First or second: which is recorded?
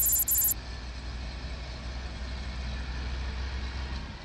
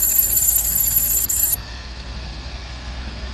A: first